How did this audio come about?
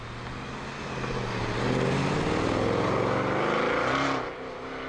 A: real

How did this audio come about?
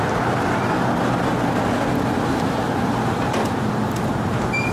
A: real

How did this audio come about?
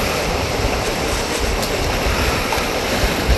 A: fake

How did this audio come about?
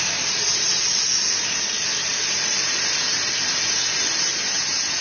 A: fake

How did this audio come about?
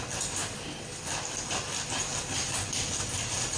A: fake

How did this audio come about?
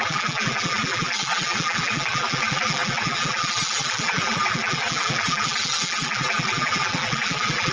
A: fake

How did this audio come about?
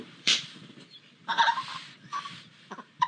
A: fake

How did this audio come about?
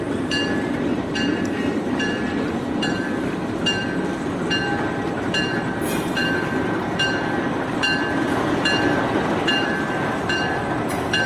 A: fake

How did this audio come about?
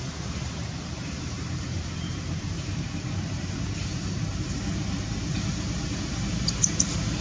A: fake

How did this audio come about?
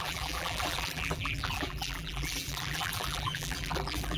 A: fake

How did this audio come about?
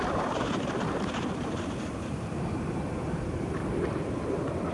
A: fake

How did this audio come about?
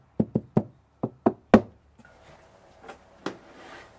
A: real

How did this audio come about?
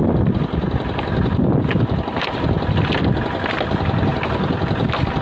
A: fake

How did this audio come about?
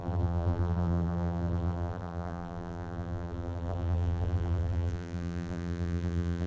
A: fake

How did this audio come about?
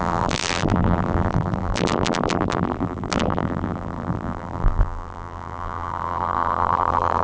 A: fake